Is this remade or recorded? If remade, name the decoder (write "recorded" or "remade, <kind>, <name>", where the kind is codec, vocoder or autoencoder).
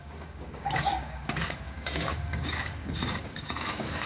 remade, codec, DAC